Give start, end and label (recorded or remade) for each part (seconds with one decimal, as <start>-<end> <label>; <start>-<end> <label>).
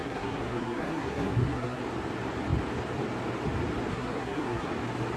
0.0-1.8 remade; 1.8-3.9 recorded; 3.9-4.7 remade; 4.7-5.2 recorded